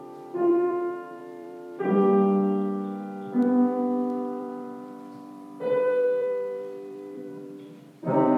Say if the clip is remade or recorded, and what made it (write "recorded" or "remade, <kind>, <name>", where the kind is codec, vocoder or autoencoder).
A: remade, vocoder, BigVGAN v2